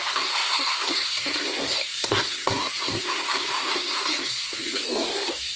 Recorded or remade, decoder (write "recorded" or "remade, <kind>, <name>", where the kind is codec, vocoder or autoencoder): remade, codec, SNAC